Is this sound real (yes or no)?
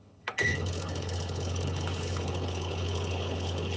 no